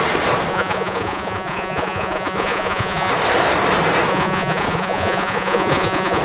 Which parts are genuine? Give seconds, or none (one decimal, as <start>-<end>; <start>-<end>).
0.0-0.5; 3.1-4.1